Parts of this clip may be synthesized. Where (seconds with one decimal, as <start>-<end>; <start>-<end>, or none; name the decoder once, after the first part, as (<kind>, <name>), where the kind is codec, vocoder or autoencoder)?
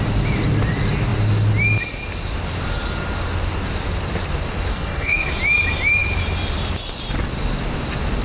4.7-5.3 (codec, SNAC)